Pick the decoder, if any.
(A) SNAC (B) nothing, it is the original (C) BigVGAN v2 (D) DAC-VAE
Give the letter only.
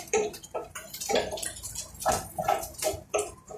B